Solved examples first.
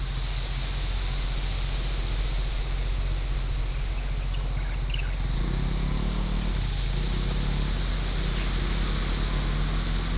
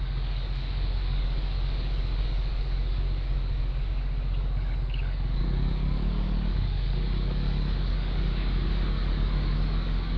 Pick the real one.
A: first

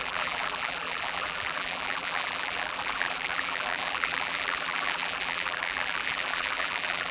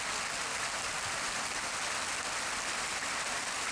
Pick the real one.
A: second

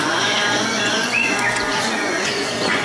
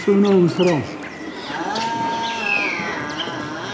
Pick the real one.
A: second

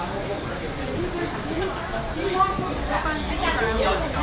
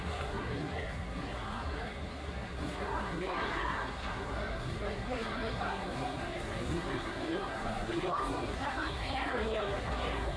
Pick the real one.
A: first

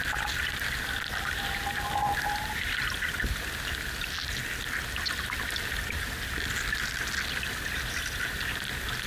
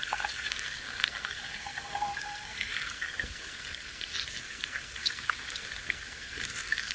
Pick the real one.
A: first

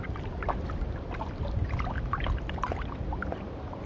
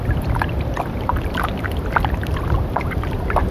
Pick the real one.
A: second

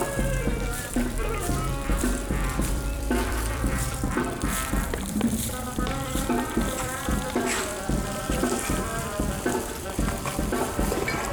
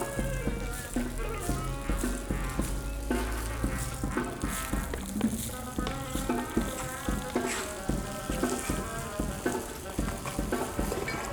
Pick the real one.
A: second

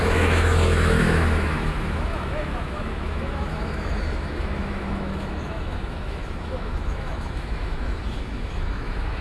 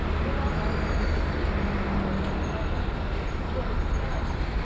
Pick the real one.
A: second